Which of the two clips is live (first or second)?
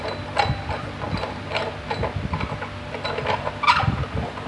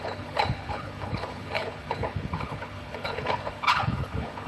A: first